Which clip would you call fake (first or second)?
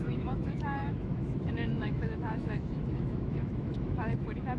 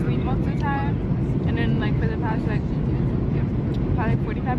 first